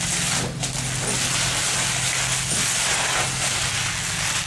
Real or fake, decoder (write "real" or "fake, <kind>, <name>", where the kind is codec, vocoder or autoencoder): real